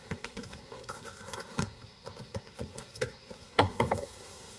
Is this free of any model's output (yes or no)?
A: no